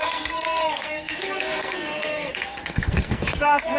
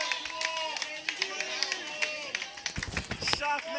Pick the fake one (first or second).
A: first